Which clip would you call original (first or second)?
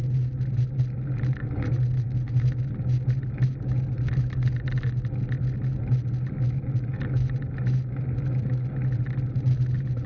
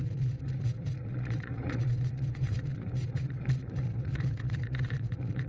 first